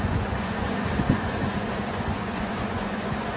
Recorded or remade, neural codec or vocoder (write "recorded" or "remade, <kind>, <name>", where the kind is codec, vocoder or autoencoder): remade, vocoder, Vocos